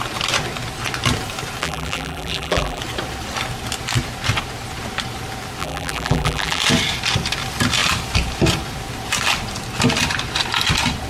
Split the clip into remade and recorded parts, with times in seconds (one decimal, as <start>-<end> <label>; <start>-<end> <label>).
0.0-1.6 recorded; 1.6-2.8 remade; 2.8-5.6 recorded; 5.6-6.6 remade; 6.6-11.1 recorded